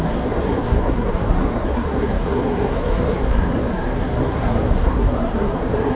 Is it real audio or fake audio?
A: fake